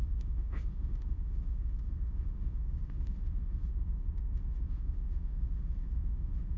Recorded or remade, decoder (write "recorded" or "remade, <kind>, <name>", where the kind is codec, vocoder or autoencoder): remade, autoencoder, DAC-VAE